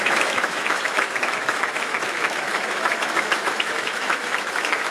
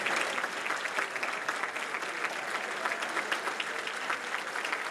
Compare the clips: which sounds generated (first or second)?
first